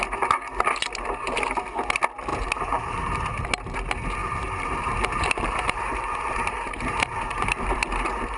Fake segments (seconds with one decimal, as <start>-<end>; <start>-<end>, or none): 2.3-3.1; 4.2-7.8